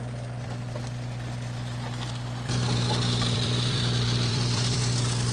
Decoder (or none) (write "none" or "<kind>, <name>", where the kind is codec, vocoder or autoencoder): vocoder, BigVGAN v2